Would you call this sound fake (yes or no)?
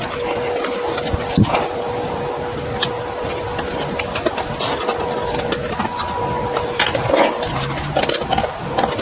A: no